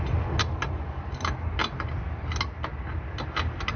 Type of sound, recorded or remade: recorded